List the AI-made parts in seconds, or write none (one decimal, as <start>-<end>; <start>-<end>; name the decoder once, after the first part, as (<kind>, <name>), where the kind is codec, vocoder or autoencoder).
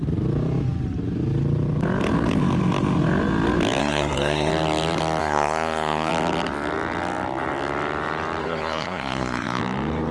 3.8-4.5 (codec, SNAC); 5.2-6.1; 8.4-9.6